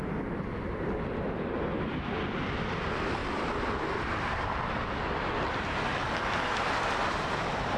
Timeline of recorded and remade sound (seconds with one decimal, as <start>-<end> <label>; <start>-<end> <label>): 0.0-3.2 recorded; 3.2-3.9 remade; 3.9-7.8 recorded